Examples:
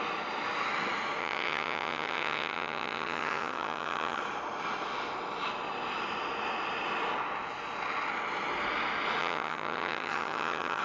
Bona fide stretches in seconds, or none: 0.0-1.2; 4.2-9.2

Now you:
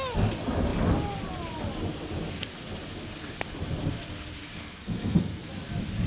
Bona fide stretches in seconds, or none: 0.0-4.6; 5.5-6.1

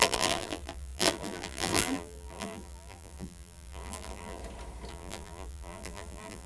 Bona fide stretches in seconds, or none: 4.4-4.9

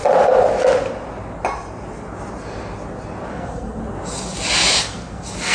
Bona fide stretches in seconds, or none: 0.0-3.3; 3.8-4.8

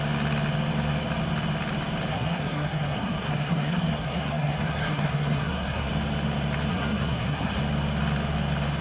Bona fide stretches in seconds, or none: 0.0-2.1; 5.9-6.7; 7.6-8.8